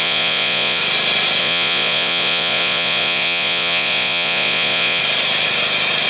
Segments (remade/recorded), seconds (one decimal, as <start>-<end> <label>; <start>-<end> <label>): 0.0-0.8 remade; 0.8-1.4 recorded; 1.4-5.0 remade; 5.0-6.1 recorded